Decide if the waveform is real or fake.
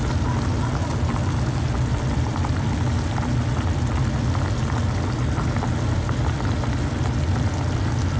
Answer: real